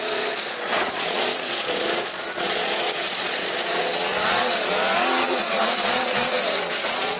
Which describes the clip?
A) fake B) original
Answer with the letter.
A